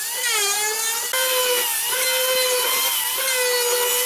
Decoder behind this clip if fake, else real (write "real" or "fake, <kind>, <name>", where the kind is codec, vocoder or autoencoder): real